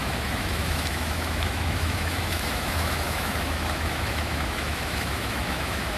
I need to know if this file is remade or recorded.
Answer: remade